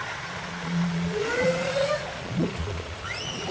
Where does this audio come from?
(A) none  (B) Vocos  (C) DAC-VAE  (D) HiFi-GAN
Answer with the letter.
B